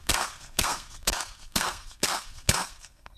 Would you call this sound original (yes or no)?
no